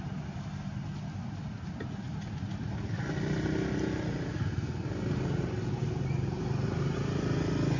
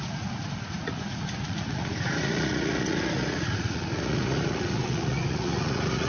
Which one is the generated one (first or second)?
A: second